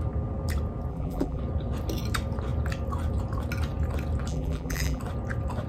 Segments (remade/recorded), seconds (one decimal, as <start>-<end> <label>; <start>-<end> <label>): 0.0-0.9 recorded; 0.9-1.4 remade; 1.4-4.3 recorded; 4.3-5.0 remade; 5.0-5.7 recorded